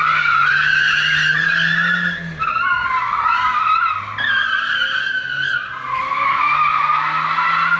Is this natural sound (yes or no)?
yes